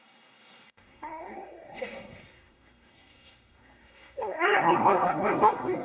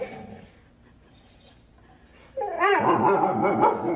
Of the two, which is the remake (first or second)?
first